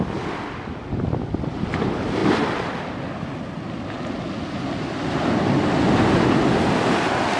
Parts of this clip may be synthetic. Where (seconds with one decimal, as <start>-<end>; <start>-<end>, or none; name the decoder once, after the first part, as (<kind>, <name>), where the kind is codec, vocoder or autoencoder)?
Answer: none